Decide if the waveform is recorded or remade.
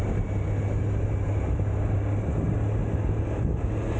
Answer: recorded